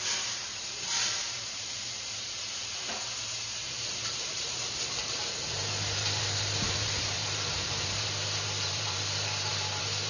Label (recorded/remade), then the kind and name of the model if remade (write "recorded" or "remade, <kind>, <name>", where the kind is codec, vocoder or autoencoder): remade, vocoder, BigVGAN v2